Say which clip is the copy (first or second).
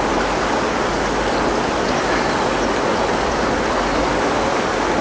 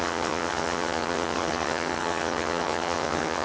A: second